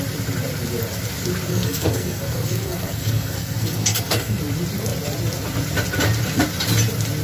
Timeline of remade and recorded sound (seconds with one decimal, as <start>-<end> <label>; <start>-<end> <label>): 0.0-1.5 recorded; 1.5-4.4 remade; 4.4-7.2 recorded